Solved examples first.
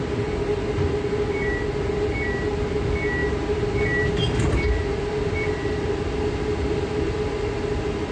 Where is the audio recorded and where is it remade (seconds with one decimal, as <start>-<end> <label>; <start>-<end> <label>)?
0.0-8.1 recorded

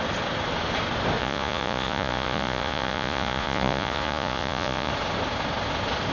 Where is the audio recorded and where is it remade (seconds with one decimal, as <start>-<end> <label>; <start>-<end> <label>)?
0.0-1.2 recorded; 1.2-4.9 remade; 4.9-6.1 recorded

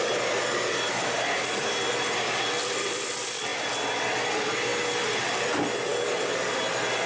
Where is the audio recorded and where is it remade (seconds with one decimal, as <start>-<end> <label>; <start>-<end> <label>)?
0.0-7.1 recorded

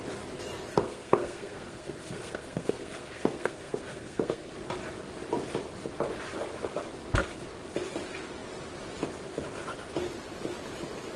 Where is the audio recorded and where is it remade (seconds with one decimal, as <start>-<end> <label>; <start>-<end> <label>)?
0.0-0.7 recorded; 0.7-4.5 remade; 4.5-11.2 recorded

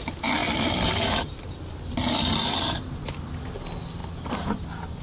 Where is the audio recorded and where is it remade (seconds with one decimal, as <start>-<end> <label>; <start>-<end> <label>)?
0.0-5.0 recorded